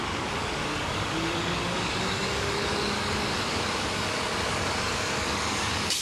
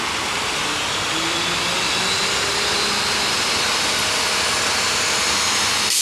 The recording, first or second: second